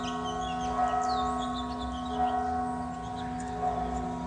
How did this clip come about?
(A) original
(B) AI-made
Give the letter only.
A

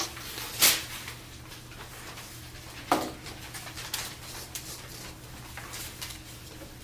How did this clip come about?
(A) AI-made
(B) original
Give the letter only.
B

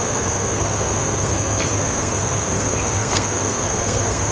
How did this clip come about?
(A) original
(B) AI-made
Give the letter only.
B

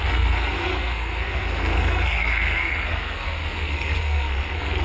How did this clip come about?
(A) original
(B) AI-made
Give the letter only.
B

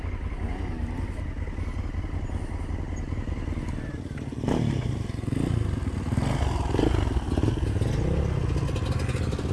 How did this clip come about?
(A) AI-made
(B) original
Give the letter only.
B